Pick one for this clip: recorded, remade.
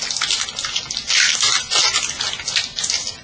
recorded